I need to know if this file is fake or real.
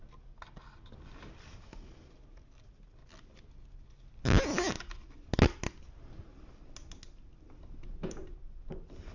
real